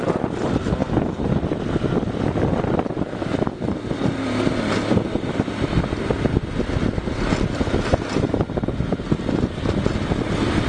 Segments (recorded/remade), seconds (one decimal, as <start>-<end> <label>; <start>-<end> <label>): 0.0-10.7 recorded